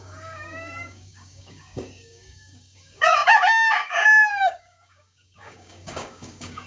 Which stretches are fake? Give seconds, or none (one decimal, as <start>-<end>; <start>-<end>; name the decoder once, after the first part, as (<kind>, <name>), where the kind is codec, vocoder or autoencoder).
0.0-6.7 (codec, DAC)